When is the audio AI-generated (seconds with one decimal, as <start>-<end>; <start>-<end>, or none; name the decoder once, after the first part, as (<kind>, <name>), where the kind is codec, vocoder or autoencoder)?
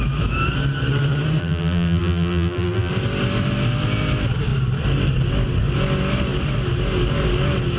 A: 1.4-2.9 (vocoder, BigVGAN v2)